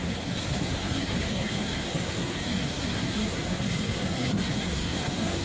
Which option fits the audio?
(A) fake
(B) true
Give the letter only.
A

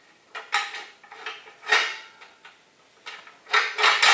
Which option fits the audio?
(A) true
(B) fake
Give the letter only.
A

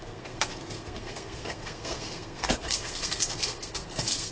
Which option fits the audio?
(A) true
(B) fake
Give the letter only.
B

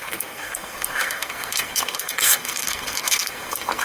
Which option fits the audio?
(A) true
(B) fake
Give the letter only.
B